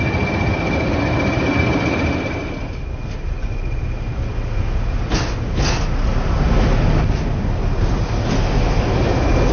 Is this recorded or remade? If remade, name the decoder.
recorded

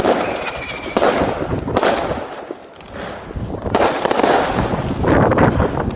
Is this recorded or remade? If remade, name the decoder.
recorded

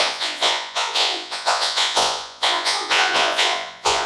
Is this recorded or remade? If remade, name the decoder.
remade, vocoder, Vocos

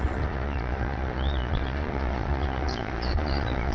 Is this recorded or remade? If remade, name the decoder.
remade, vocoder, Vocos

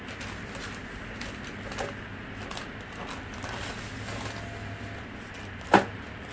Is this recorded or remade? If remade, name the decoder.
recorded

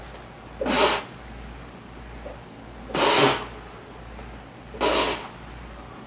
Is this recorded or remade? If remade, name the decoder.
recorded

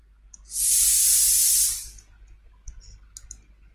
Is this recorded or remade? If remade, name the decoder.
recorded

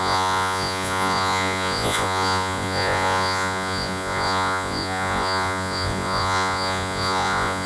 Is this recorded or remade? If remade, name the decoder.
remade, vocoder, Vocos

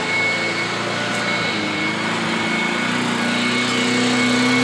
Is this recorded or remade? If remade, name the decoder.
recorded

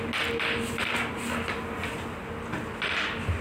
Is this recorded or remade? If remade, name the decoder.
recorded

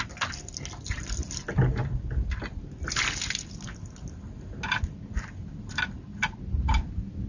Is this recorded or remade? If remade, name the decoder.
recorded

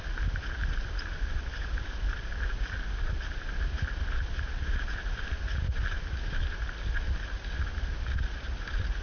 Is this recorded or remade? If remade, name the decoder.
recorded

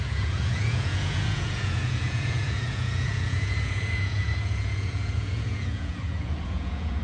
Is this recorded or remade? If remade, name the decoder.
remade, vocoder, Vocos